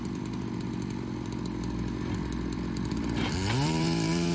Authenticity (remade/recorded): remade